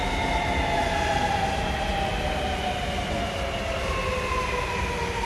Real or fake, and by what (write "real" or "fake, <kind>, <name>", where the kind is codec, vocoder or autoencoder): real